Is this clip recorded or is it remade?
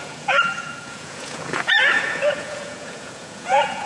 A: remade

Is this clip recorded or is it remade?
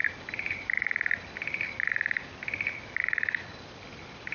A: recorded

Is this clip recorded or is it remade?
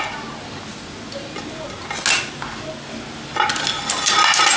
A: recorded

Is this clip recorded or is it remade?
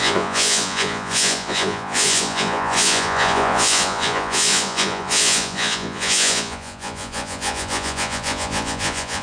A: remade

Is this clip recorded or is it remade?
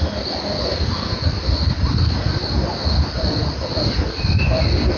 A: recorded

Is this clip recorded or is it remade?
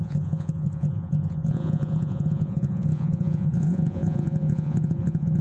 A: remade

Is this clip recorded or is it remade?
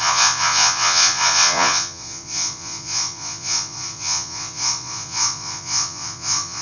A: remade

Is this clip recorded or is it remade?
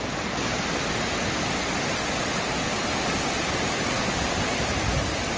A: recorded